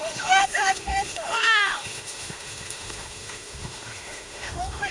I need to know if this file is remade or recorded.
remade